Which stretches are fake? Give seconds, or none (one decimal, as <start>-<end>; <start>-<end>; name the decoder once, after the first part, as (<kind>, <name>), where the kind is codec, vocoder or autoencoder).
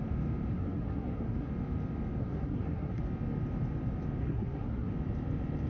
0.5-1.5 (codec, SNAC); 2.2-3.0; 4.2-4.9